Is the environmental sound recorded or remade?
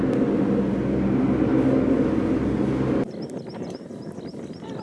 recorded